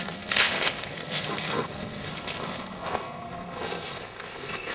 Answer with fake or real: fake